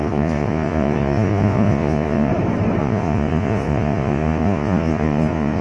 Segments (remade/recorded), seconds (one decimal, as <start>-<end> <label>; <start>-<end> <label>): 0.0-2.3 remade; 2.3-2.8 recorded; 2.8-5.6 remade